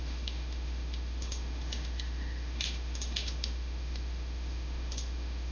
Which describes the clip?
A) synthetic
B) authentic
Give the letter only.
A